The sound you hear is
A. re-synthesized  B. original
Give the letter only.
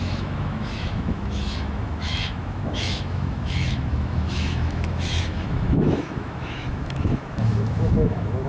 A